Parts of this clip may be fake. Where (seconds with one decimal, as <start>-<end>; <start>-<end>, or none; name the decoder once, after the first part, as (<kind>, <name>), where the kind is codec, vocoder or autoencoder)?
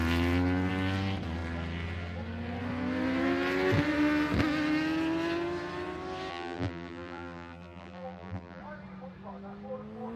6.3-8.6 (vocoder, BigVGAN v2)